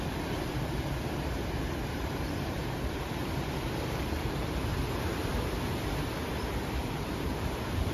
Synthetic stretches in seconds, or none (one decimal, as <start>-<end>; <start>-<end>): 0.0-5.3; 6.8-7.9